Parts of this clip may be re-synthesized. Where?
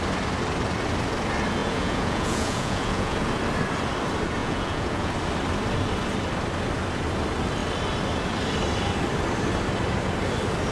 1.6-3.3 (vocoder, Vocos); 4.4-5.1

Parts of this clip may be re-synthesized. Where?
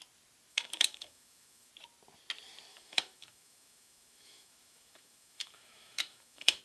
0.5-1.7 (autoencoder, DAC-VAE); 2.7-6.6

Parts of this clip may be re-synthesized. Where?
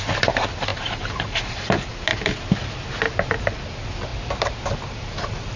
0.7-1.9 (vocoder, BigVGAN v2)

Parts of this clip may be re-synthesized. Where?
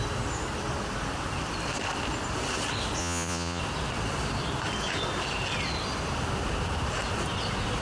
3.0-3.6 (vocoder, Vocos)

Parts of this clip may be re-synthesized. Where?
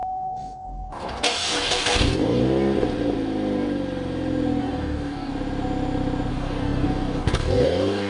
0.0-2.4 (codec, DAC); 4.6-5.3; 6.3-8.1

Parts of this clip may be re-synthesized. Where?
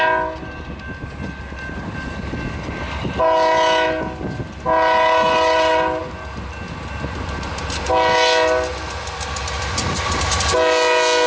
none